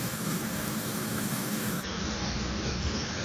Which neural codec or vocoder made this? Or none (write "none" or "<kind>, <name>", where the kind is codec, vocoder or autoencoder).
codec, DAC